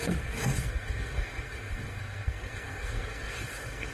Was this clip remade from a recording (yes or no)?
yes